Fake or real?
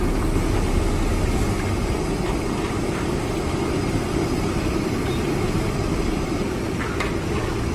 real